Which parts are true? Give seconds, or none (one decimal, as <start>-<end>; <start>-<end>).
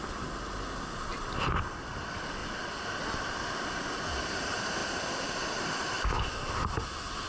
0.0-7.3